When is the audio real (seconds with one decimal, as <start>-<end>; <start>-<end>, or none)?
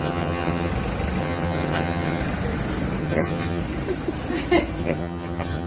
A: 0.7-1.2; 2.2-3.0; 3.6-4.8